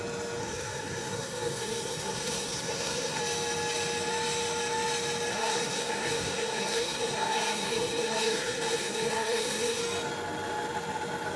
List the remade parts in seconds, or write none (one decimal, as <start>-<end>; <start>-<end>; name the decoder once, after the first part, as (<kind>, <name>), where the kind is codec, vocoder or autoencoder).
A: 0.4-3.2 (codec, SNAC); 5.3-9.8